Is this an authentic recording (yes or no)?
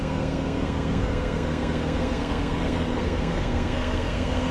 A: no